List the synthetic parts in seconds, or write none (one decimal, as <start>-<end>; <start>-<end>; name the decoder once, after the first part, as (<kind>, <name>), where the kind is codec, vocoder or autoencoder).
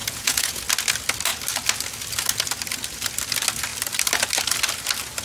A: 0.0-0.6 (vocoder, Vocos)